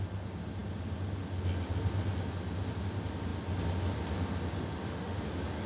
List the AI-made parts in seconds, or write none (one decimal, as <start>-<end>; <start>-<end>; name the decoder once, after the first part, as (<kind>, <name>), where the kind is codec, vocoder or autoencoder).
4.8-5.3 (autoencoder, DAC-VAE)

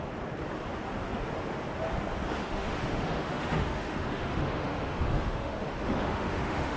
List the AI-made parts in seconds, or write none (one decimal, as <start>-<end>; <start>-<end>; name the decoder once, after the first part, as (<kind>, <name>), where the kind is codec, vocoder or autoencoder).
2.4-6.8 (autoencoder, DAC-VAE)

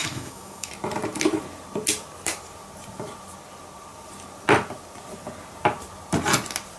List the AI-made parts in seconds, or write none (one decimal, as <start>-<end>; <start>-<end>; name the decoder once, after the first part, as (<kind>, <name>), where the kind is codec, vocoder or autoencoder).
0.0-0.7 (autoencoder, DAC-VAE)

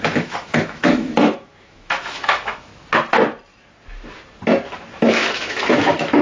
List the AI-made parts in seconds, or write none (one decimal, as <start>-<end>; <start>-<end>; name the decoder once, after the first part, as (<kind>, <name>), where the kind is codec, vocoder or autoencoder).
0.0-2.7 (autoencoder, DAC-VAE); 4.9-6.2

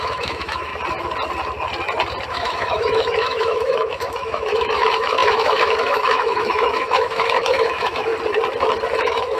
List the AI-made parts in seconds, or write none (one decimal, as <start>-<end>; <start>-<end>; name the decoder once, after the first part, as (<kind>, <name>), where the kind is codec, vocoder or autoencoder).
0.0-0.7 (autoencoder, DAC-VAE); 2.3-8.1; 9.0-9.4